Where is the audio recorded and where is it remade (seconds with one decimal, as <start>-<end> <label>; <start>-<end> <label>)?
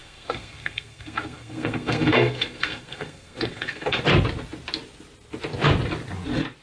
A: 0.0-4.0 remade; 4.0-6.6 recorded